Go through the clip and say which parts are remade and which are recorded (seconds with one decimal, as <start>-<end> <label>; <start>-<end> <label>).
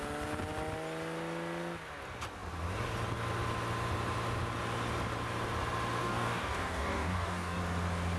0.0-6.0 recorded; 6.0-7.6 remade; 7.6-8.2 recorded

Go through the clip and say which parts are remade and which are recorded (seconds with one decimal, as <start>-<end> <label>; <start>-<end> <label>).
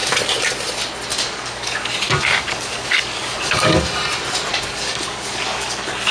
0.0-1.1 recorded; 1.1-3.8 remade; 3.8-4.5 recorded; 4.5-6.1 remade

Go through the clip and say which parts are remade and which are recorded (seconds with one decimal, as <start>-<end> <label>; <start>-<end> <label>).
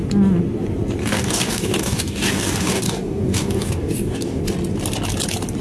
0.0-1.0 recorded; 1.0-4.4 remade; 4.4-5.6 recorded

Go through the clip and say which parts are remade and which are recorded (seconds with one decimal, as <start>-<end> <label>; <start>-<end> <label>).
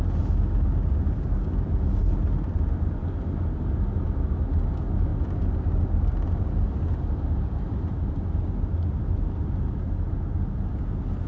0.0-11.3 recorded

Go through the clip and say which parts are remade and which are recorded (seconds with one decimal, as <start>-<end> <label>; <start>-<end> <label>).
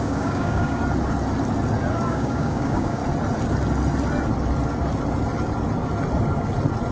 0.0-0.8 remade; 0.8-2.1 recorded; 2.1-3.0 remade; 3.0-6.9 recorded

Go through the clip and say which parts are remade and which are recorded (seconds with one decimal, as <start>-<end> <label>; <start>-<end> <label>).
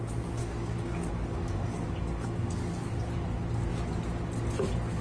0.0-0.4 recorded; 0.4-2.9 remade; 2.9-5.0 recorded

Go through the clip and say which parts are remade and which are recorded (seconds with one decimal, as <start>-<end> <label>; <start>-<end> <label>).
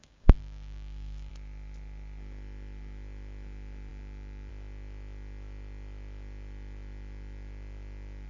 0.0-1.3 remade; 1.3-8.3 recorded